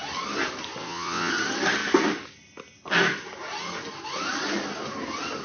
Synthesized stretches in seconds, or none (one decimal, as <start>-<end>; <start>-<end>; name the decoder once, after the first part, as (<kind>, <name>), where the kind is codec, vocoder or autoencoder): 0.8-1.3 (vocoder, WaveNeXt)